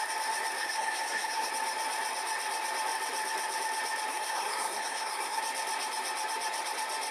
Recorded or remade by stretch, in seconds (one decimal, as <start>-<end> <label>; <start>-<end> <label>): 0.0-0.6 recorded; 0.6-1.5 remade; 1.5-4.1 recorded; 4.1-5.4 remade; 5.4-7.1 recorded

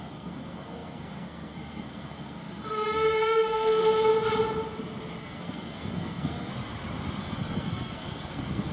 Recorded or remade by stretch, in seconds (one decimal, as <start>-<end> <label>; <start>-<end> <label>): 0.0-4.1 remade; 4.1-5.2 recorded; 5.2-6.5 remade; 6.5-7.2 recorded; 7.2-8.7 remade

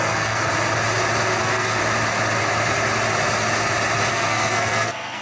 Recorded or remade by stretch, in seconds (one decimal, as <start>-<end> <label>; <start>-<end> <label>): 0.0-0.5 remade; 0.5-1.4 recorded; 1.4-1.8 remade; 1.8-4.1 recorded; 4.1-5.2 remade